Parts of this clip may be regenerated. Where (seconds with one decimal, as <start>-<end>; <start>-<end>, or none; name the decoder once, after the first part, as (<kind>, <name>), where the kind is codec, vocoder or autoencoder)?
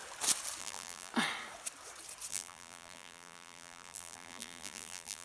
0.6-1.1 (vocoder, BigVGAN v2); 2.3-5.2